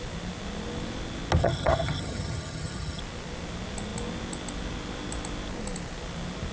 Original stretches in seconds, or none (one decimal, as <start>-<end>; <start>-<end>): 0.0-1.4; 3.0-6.5